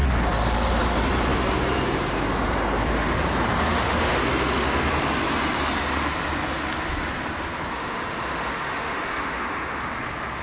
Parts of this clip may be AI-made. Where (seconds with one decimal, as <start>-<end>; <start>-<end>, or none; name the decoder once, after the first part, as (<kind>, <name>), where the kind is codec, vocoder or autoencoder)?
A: 3.7-4.2 (autoencoder, DAC-VAE); 7.7-9.8